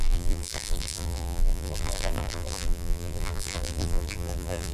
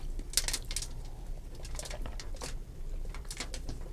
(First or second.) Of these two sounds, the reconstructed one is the first